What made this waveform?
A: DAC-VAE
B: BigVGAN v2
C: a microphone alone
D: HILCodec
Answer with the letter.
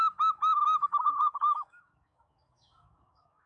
A